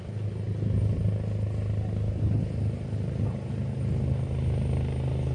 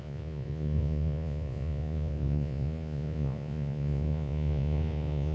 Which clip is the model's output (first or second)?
second